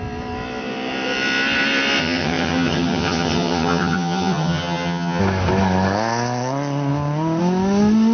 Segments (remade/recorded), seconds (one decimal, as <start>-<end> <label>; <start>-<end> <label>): 0.0-2.0 recorded; 2.0-5.2 remade; 5.2-8.1 recorded